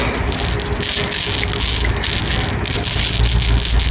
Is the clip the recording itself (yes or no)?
yes